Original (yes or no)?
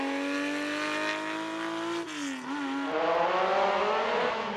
yes